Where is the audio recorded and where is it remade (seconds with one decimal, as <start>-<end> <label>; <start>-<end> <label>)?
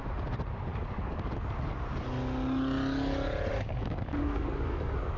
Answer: 0.0-0.7 recorded; 0.7-1.3 remade; 1.3-3.5 recorded; 3.5-5.2 remade